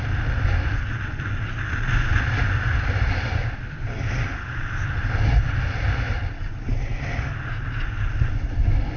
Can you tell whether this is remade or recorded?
recorded